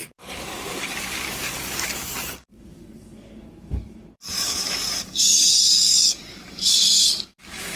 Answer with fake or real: fake